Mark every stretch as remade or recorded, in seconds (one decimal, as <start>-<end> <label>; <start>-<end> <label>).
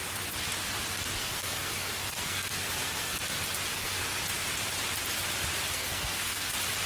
0.0-1.2 recorded; 1.2-3.2 remade; 3.2-3.7 recorded; 3.7-4.2 remade; 4.2-5.7 recorded; 5.7-6.5 remade; 6.5-6.9 recorded